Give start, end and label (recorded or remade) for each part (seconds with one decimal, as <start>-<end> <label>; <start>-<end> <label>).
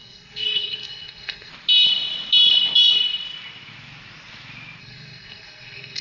0.0-1.5 remade; 1.5-4.8 recorded; 4.8-6.0 remade